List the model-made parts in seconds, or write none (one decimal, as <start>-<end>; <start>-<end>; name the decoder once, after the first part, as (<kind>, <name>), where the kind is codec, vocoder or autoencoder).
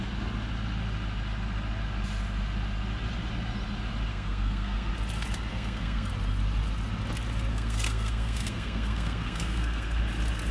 4.1-4.9 (codec, SNAC); 5.5-6.1; 7.5-10.0